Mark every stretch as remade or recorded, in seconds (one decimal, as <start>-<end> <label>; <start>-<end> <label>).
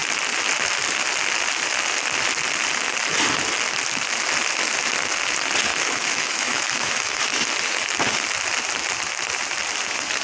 0.0-5.7 recorded; 5.7-7.2 remade; 7.2-10.2 recorded